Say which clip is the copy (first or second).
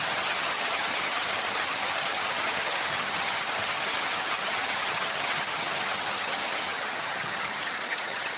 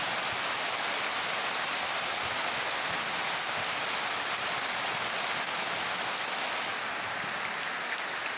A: first